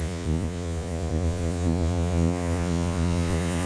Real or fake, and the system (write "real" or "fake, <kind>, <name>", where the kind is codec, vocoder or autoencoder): fake, vocoder, Vocos